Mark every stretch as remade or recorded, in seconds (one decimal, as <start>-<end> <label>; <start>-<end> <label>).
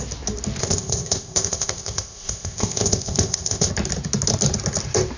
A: 0.0-0.6 recorded; 0.6-3.7 remade; 3.7-5.2 recorded